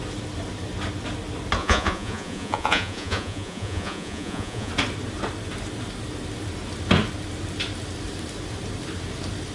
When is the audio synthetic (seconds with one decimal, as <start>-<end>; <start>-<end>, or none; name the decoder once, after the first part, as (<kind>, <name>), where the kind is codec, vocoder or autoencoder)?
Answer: 1.6-4.7 (vocoder, Vocos)